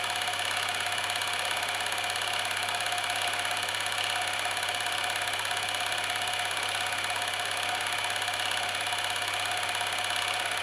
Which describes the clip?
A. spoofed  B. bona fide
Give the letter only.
B